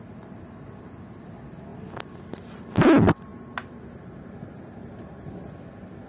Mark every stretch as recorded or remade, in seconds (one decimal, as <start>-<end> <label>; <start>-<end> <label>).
0.0-6.1 recorded